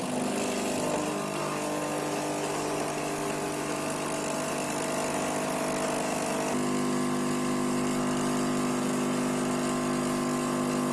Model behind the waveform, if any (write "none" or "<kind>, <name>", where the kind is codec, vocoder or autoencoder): none